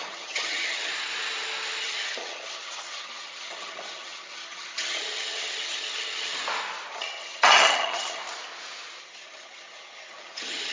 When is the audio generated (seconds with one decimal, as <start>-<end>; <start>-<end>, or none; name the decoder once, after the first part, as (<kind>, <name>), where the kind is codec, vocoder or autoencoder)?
0.0-0.9 (vocoder, HiFi-GAN); 1.8-6.4; 6.9-8.2; 9.0-10.7